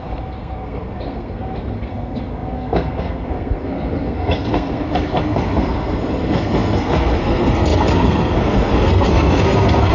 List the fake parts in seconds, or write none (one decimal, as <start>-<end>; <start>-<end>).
0.0-9.9